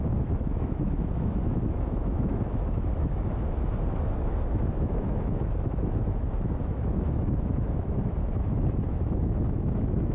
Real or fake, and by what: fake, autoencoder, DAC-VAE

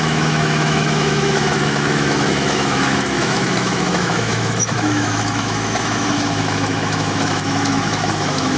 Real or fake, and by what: fake, autoencoder, DAC-VAE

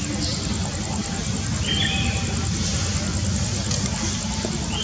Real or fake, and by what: real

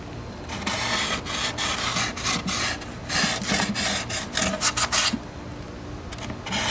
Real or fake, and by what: real